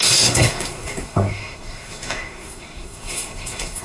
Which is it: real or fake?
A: fake